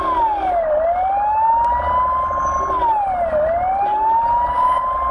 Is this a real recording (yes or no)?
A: yes